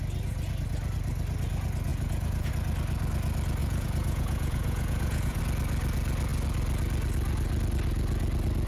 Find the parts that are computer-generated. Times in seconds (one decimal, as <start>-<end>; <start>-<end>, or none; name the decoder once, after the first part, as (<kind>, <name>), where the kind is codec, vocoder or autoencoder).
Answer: 1.9-2.5 (vocoder, Vocos); 3.6-5.4